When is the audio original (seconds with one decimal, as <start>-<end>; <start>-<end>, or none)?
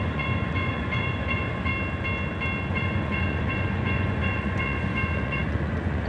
1.7-2.7